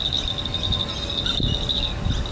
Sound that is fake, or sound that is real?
real